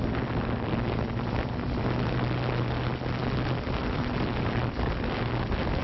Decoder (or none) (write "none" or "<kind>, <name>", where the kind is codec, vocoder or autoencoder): none